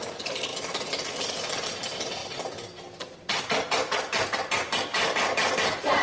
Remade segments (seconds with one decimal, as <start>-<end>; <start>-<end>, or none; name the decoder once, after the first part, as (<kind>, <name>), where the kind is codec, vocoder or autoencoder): none